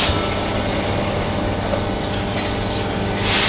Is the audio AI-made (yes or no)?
no